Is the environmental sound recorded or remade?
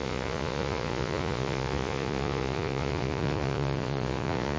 remade